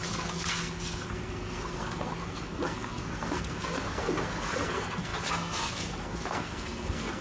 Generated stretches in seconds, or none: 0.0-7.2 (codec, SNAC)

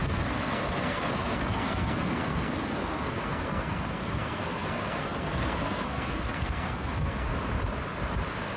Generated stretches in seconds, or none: 0.0-7.3 (codec, SNAC)

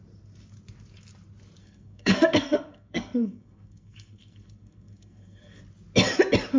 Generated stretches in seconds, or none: 1.6-5.6 (codec, SNAC)

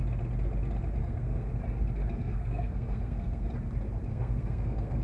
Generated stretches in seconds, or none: 1.0-1.5 (codec, SNAC); 2.1-3.5; 4.1-5.0

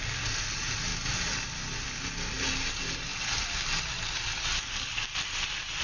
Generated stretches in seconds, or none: none

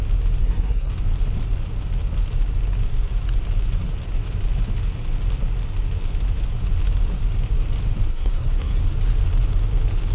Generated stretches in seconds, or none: 0.4-0.9 (codec, SNAC); 8.1-8.8

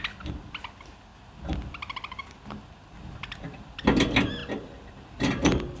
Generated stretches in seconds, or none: none